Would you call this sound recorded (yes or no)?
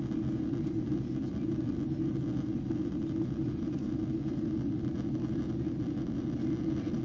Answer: yes